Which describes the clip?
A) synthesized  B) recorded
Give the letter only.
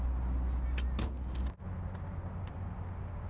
B